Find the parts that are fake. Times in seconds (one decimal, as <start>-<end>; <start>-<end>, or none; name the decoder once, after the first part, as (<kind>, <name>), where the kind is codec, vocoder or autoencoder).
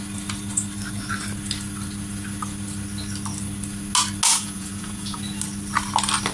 4.3-5.2 (vocoder, Vocos)